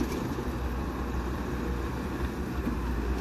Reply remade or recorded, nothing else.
recorded